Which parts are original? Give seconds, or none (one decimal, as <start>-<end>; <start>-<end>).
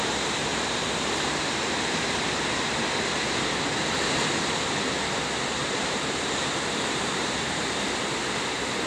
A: 0.0-0.5; 2.4-5.6; 7.8-8.9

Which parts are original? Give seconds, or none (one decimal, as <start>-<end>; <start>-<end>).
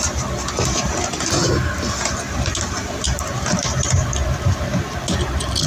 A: 0.0-5.7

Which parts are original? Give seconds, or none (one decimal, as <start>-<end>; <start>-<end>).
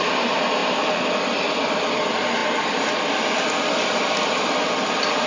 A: 0.0-5.3